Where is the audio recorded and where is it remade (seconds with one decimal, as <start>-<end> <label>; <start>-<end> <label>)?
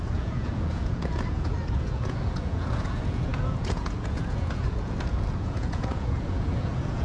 0.0-7.0 remade